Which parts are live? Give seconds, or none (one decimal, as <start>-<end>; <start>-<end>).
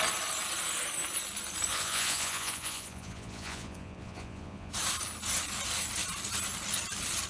0.0-1.7; 4.7-7.3